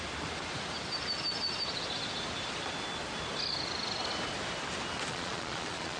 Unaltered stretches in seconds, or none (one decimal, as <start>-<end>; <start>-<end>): 0.0-5.1